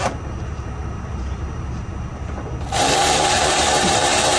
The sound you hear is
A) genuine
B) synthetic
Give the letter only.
B